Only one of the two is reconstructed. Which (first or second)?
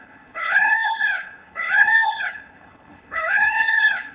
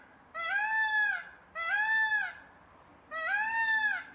first